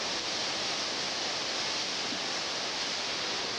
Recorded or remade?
recorded